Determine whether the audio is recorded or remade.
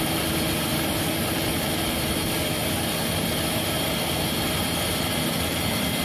remade